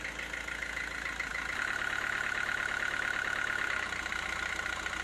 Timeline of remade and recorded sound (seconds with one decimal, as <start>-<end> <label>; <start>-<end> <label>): 0.0-5.0 recorded